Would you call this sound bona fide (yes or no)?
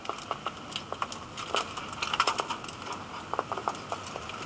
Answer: yes